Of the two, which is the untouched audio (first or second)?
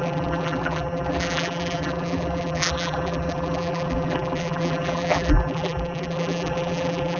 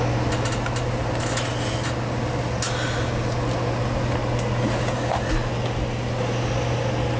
second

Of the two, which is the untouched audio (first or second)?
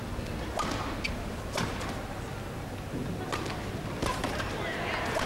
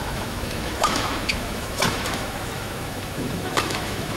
first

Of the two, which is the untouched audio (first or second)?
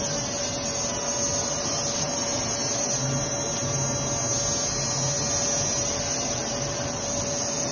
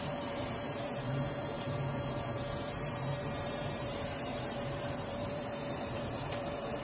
first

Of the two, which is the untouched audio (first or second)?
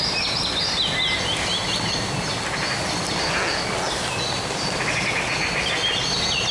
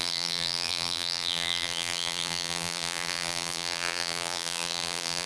first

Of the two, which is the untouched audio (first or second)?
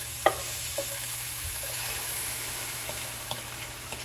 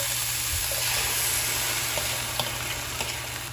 second